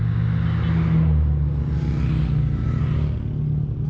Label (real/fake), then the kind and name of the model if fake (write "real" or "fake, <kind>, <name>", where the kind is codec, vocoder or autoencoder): real